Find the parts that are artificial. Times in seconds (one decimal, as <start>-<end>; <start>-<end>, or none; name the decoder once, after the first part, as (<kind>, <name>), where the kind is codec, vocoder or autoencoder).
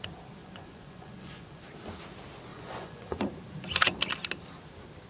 0.4-1.6 (vocoder, Vocos); 2.5-3.3